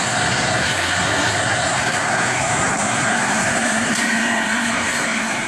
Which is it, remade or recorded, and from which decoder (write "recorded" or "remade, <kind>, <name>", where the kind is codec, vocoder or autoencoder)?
remade, codec, SNAC